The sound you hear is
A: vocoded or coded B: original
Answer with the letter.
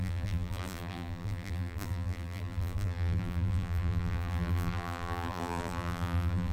A